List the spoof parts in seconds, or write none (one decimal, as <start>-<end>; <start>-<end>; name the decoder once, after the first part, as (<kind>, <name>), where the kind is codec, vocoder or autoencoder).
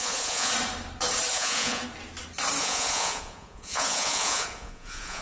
0.0-0.5 (vocoder, Vocos); 1.3-1.8; 2.6-5.2